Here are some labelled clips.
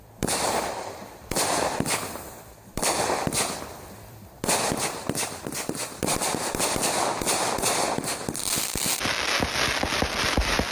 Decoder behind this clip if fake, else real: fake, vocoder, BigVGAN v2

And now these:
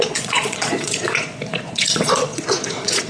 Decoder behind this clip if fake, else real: fake, vocoder, Vocos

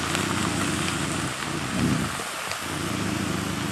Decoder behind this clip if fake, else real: real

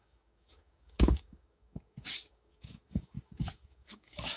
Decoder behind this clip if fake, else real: fake, codec, DAC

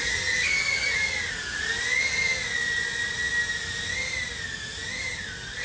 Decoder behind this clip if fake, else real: real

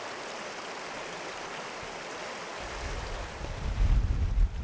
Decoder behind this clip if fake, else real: real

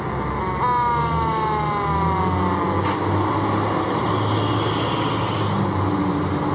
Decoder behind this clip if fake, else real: real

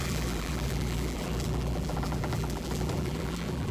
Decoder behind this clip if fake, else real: fake, vocoder, BigVGAN v2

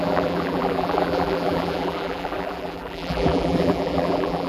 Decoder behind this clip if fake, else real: fake, vocoder, BigVGAN v2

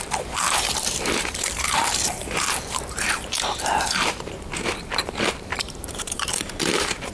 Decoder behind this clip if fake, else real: fake, vocoder, BigVGAN v2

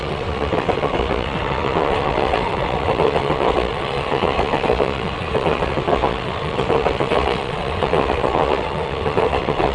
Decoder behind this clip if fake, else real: fake, vocoder, WaveNeXt